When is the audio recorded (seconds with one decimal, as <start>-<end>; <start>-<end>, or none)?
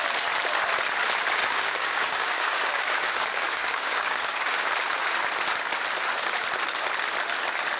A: 0.0-1.4; 4.7-7.8